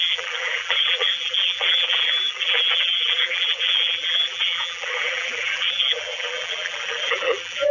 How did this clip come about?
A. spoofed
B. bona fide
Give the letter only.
A